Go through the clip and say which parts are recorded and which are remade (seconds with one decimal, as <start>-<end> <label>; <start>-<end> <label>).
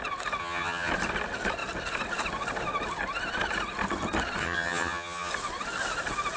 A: 0.0-0.4 recorded; 0.4-0.9 remade; 0.9-4.4 recorded; 4.4-5.3 remade; 5.3-6.4 recorded